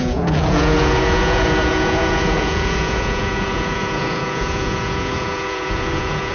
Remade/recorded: remade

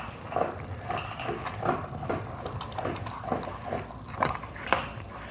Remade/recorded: recorded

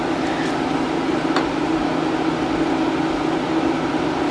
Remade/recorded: remade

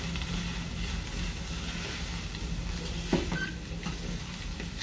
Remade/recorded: recorded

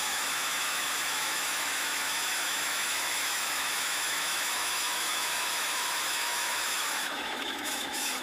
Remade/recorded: remade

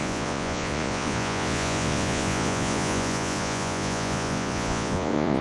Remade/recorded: remade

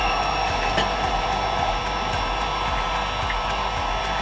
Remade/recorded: recorded